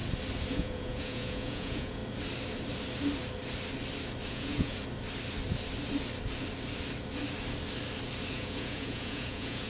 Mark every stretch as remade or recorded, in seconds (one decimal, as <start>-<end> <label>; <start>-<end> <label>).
0.0-0.5 recorded; 0.5-2.0 remade; 2.0-4.3 recorded; 4.3-4.8 remade; 4.8-8.3 recorded; 8.3-9.7 remade